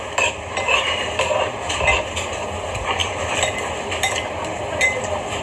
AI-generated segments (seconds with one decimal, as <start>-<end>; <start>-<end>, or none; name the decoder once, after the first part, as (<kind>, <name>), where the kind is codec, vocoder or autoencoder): none